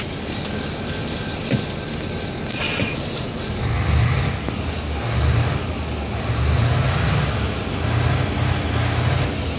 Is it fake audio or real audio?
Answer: real